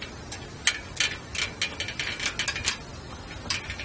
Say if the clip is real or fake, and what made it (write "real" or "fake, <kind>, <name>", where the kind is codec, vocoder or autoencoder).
real